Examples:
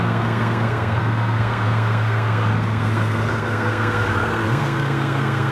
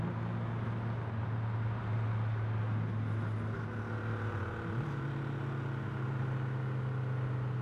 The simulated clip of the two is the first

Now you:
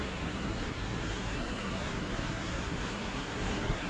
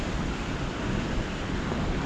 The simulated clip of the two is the first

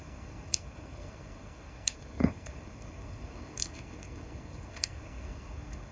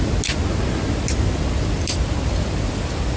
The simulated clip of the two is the first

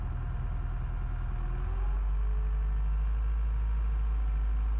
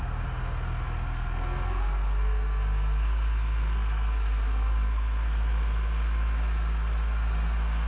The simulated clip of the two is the second